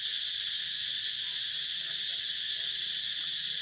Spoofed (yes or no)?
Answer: no